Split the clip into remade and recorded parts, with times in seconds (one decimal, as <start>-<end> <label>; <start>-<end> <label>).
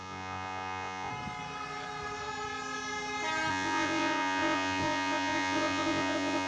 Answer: 0.0-1.1 remade; 1.1-3.5 recorded; 3.5-6.5 remade